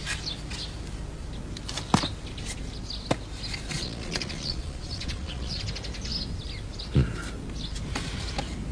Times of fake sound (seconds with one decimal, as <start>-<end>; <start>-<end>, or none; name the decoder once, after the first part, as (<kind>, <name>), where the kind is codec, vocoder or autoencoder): 3.7-5.6 (vocoder, Vocos)